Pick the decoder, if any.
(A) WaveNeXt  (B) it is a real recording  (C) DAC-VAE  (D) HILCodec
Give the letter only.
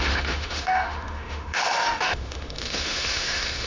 C